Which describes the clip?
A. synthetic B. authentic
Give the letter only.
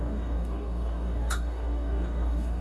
A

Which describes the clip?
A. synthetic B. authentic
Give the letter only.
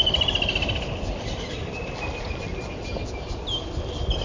B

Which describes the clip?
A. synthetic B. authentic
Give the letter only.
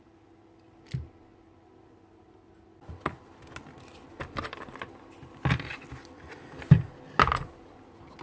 B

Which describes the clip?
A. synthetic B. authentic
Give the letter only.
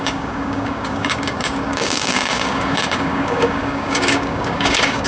A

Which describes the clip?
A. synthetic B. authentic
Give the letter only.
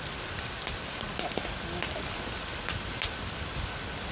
B